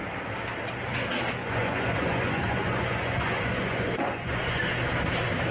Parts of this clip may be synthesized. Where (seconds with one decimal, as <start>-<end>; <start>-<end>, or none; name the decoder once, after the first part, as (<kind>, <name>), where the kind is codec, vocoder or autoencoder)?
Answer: 1.4-4.6 (vocoder, Vocos)